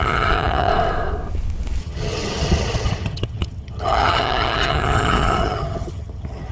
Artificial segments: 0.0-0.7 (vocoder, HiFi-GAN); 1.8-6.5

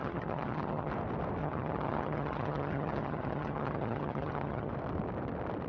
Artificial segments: 0.0-0.9 (vocoder, HiFi-GAN); 1.4-4.7

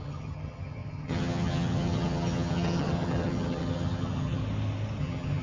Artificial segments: 0.0-4.4 (vocoder, HiFi-GAN); 5.0-5.4

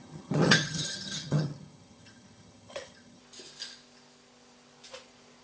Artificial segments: 0.0-3.2 (vocoder, HiFi-GAN)

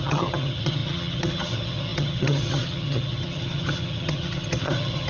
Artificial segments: 0.0-5.1 (vocoder, HiFi-GAN)